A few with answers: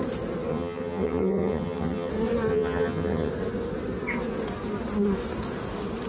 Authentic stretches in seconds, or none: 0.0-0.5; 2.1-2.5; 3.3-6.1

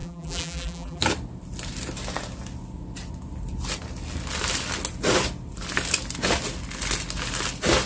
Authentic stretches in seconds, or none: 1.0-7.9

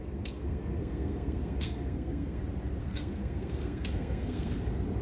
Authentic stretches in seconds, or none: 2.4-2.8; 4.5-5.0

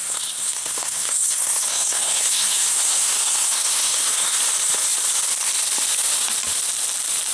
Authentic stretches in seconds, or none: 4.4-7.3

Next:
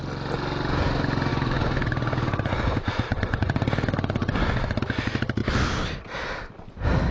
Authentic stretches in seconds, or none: 0.0-1.3; 4.8-7.1